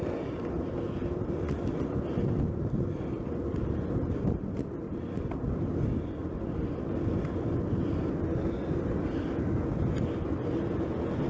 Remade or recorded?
recorded